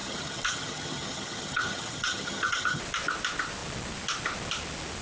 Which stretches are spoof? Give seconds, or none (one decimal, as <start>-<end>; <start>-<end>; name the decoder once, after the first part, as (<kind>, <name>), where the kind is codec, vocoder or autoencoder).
0.0-2.8 (vocoder, HiFi-GAN)